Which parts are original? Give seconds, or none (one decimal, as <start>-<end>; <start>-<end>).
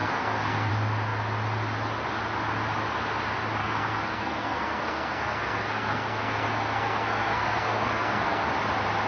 0.7-3.6; 8.5-9.1